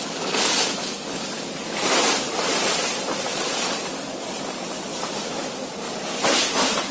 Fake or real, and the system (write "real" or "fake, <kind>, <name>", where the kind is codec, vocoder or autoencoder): real